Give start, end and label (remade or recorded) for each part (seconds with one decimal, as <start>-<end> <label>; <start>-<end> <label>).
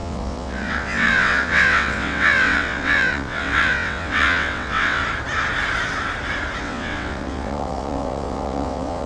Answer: 0.0-5.0 remade; 5.0-6.6 recorded; 6.6-9.1 remade